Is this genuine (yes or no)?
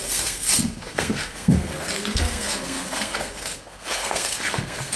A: no